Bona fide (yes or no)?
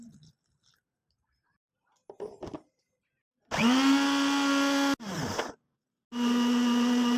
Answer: yes